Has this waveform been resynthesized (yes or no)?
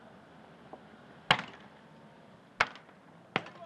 no